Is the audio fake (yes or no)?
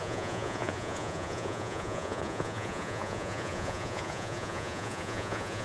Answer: yes